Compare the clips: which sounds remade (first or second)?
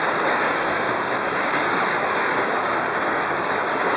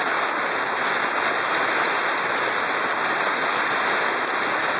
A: first